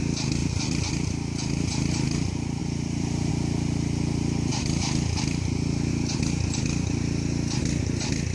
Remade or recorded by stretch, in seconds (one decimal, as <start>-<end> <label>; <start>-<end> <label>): 0.0-0.4 recorded; 0.4-0.9 remade; 0.9-2.6 recorded; 2.6-3.3 remade; 3.3-4.5 recorded; 4.5-5.9 remade; 5.9-8.3 recorded